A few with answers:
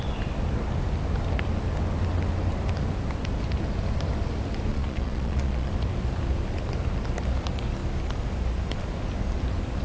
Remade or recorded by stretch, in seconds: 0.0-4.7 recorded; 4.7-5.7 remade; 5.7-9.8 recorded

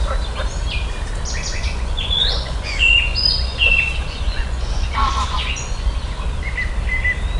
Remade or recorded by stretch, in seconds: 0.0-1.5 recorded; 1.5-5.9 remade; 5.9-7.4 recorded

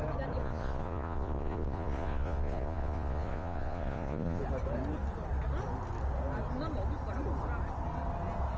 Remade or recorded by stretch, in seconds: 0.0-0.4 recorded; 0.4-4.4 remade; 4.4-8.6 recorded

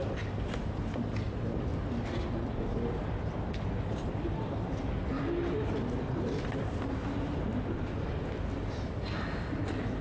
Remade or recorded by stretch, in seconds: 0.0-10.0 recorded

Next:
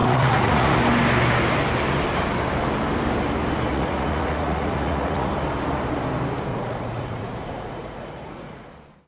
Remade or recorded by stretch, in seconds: 0.0-0.8 remade; 0.8-3.7 recorded; 3.7-5.3 remade; 5.3-6.5 recorded; 6.5-8.7 remade; 8.7-9.1 recorded